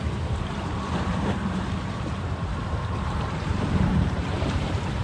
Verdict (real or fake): fake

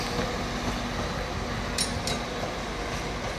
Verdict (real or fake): real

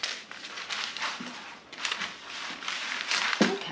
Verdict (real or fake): real